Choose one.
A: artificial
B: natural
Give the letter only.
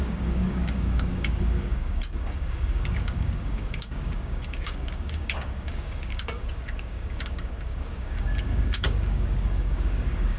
A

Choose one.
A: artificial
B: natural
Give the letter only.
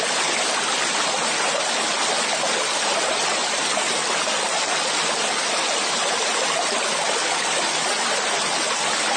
B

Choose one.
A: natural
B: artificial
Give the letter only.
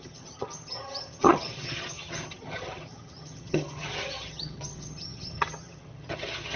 B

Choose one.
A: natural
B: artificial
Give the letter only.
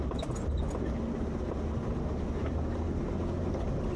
A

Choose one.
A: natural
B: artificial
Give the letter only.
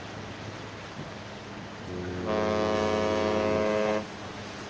A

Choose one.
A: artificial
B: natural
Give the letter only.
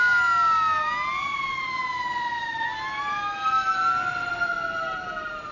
B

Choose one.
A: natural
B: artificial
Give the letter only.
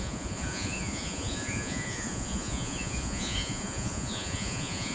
B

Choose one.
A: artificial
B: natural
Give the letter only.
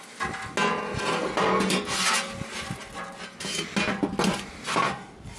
B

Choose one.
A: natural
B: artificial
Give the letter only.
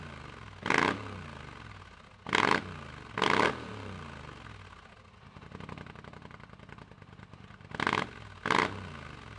A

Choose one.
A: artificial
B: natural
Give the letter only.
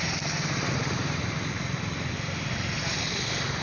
B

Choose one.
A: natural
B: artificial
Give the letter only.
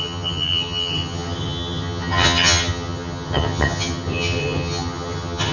B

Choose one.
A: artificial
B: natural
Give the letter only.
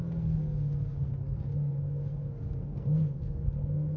A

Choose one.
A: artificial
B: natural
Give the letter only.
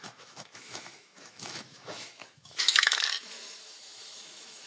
A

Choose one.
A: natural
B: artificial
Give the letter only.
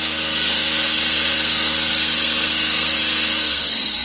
B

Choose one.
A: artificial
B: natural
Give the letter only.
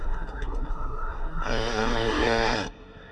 A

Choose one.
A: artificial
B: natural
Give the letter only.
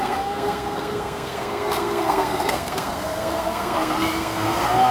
A